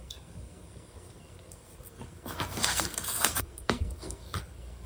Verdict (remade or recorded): remade